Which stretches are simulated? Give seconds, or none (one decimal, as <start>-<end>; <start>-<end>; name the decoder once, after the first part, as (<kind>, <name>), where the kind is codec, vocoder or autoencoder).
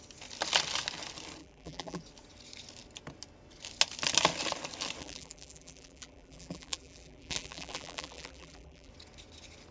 1.4-2.0 (vocoder, BigVGAN v2); 5.0-8.9